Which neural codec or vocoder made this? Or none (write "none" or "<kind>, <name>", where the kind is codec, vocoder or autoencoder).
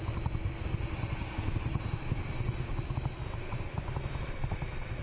none